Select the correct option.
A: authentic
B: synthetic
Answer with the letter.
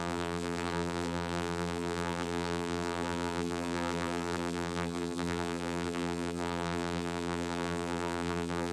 B